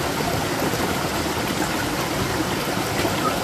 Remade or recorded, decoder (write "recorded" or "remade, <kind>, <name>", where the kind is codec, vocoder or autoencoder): recorded